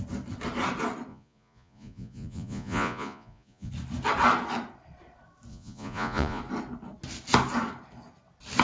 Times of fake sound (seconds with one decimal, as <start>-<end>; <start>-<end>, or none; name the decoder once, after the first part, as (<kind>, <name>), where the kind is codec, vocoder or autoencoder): 1.1-3.7 (vocoder, Vocos); 5.5-6.4